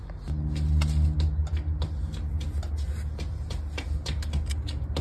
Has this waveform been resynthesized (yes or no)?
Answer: no